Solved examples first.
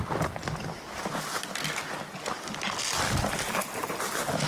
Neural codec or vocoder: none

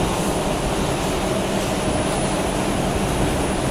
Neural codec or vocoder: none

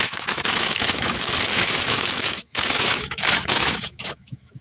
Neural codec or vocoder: autoencoder, DAC-VAE